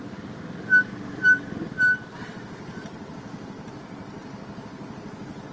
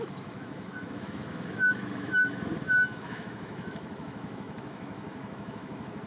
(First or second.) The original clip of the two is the first